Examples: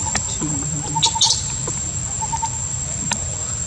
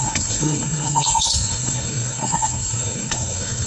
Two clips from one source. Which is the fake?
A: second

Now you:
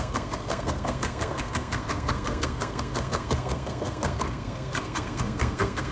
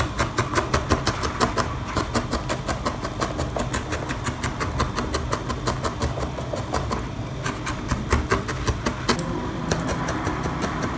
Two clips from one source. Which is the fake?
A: first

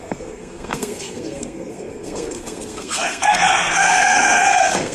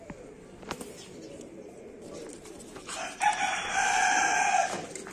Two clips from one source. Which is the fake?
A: first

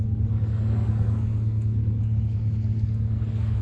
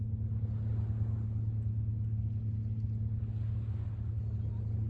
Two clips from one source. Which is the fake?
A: first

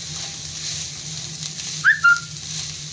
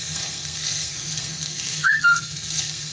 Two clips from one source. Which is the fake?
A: second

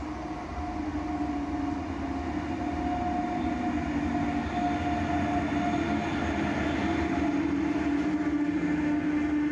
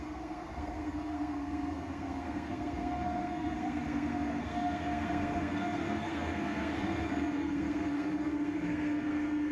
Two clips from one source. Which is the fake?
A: second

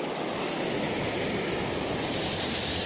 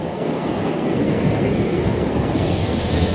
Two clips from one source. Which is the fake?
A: second